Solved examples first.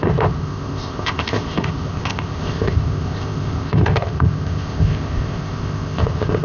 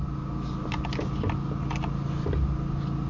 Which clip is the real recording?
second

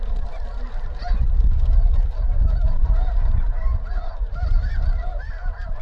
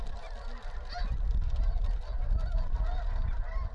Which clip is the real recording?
second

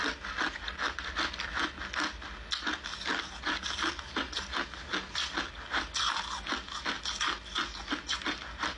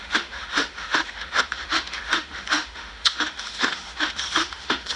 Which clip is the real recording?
first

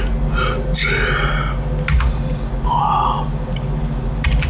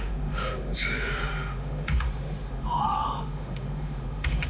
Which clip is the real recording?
first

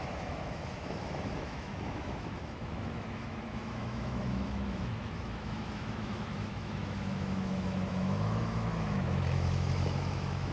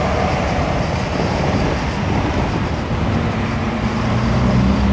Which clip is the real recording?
second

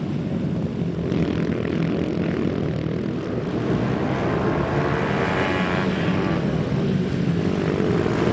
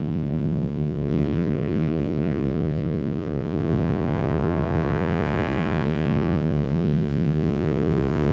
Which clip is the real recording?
first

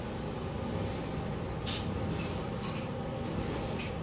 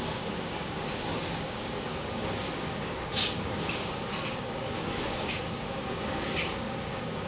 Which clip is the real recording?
first